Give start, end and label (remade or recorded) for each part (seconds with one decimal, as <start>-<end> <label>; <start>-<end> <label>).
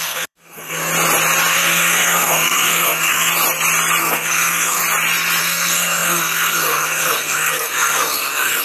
0.0-0.9 remade; 0.9-1.5 recorded; 1.5-3.3 remade; 3.3-4.0 recorded; 4.0-4.8 remade; 4.8-5.4 recorded; 5.4-8.6 remade